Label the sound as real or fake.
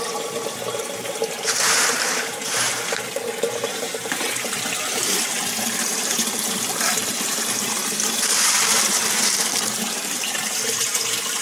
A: fake